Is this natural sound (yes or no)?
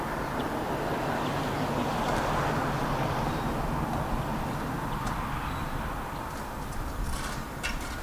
yes